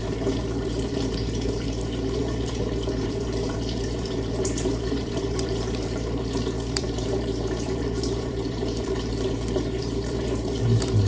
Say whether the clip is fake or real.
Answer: fake